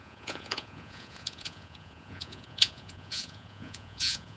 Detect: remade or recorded remade